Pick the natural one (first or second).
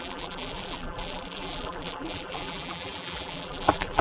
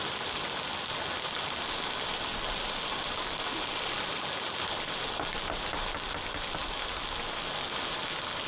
second